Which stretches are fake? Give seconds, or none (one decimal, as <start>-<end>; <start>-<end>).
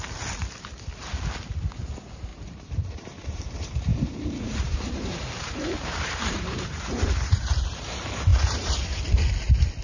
2.3-3.4; 3.9-7.5; 8.3-9.0